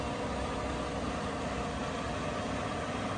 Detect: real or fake real